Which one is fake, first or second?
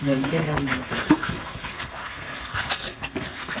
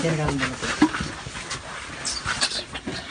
first